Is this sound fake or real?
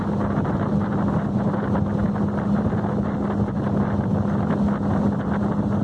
real